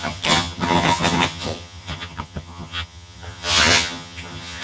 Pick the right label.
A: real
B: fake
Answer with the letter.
B